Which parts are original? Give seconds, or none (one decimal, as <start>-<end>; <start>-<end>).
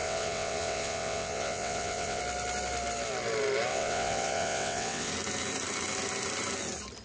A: 2.2-3.7; 5.1-7.0